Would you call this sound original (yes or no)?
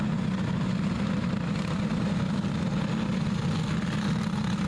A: yes